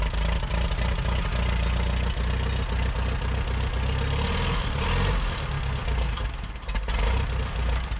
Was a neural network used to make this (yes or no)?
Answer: no